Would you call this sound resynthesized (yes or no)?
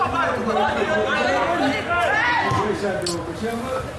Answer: no